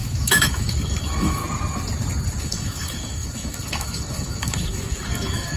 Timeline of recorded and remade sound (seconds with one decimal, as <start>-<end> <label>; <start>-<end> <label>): 0.0-1.4 remade; 1.4-2.4 recorded; 2.4-5.6 remade